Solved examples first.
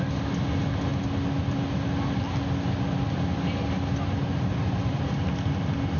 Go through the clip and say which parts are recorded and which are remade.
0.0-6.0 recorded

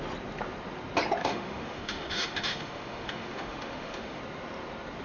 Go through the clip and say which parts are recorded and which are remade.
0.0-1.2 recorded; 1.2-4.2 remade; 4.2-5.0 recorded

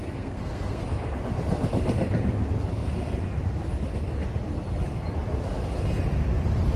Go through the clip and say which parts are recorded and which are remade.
0.0-0.8 remade; 0.8-6.8 recorded

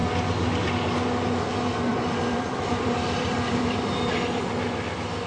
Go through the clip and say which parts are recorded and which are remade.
0.0-1.9 recorded; 1.9-3.8 remade; 3.8-5.3 recorded

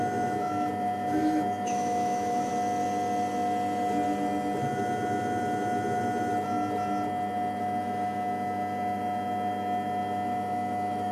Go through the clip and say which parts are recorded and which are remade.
0.0-2.5 remade; 2.5-7.6 recorded; 7.6-11.1 remade

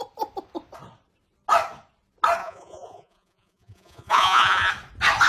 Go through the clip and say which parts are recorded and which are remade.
0.0-2.4 recorded; 2.4-4.7 remade; 4.7-5.3 recorded